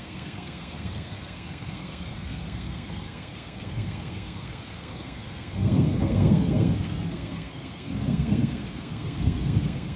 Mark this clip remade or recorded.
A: remade